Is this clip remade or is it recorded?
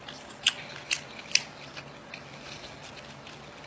recorded